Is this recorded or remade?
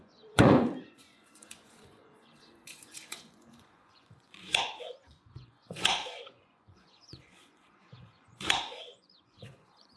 remade